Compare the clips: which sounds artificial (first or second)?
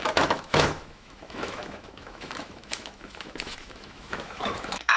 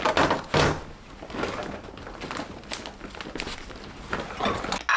first